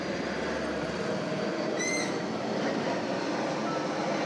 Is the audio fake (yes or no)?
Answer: no